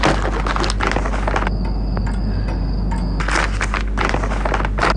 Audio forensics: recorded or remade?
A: recorded